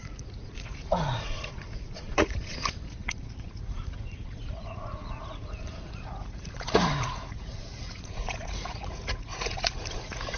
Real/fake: fake